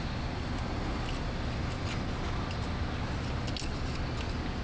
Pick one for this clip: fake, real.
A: real